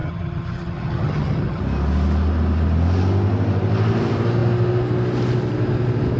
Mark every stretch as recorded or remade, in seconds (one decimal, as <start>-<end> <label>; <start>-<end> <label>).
0.0-1.6 remade; 1.6-6.2 recorded